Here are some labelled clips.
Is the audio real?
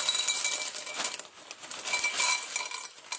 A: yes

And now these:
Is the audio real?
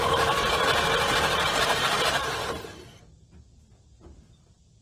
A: yes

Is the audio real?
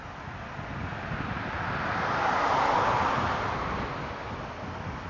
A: yes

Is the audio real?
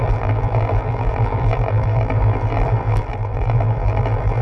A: no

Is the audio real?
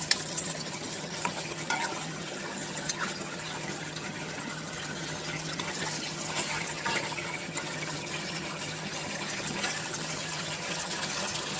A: no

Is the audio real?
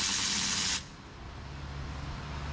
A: yes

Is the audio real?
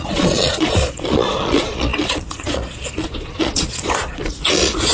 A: no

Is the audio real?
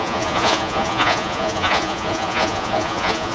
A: no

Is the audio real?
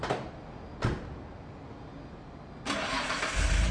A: yes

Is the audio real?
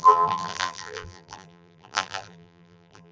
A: no